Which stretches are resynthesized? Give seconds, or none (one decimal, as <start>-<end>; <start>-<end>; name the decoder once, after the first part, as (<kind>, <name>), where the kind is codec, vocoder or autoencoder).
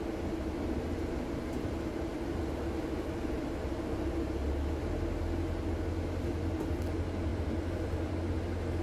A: 7.3-8.3 (vocoder, BigVGAN v2)